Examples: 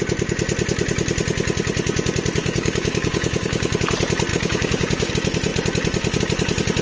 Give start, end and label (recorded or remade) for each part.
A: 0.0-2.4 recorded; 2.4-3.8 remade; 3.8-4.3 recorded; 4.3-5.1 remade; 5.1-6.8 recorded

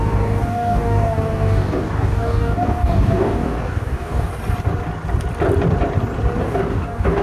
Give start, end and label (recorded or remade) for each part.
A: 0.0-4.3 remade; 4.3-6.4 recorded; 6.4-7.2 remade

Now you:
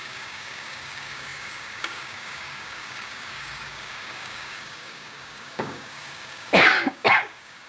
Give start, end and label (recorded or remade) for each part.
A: 0.0-7.7 remade

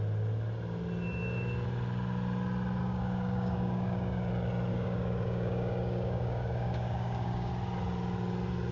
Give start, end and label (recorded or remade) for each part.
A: 0.0-2.8 recorded; 2.8-4.3 remade; 4.3-4.7 recorded; 4.7-7.5 remade; 7.5-8.7 recorded